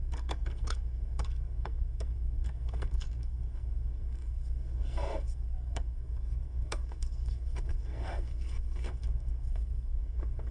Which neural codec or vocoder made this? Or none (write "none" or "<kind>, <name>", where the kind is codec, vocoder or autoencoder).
codec, SNAC